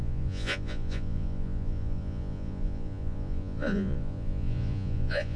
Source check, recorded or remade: remade